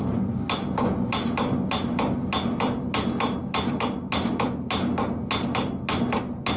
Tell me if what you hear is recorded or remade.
recorded